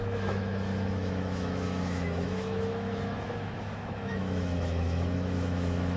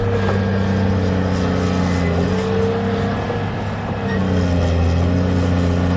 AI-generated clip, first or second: first